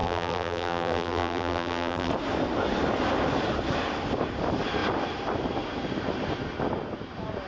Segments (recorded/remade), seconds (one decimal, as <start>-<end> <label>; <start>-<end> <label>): 0.0-2.1 remade; 2.1-7.5 recorded